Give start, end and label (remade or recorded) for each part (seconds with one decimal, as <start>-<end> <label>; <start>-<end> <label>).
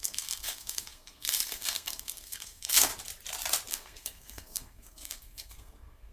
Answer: 0.0-2.9 remade; 2.9-3.7 recorded; 3.7-6.1 remade